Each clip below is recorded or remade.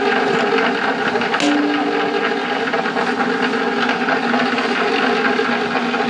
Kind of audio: recorded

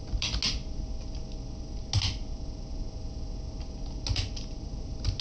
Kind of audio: recorded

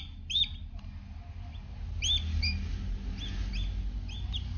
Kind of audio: recorded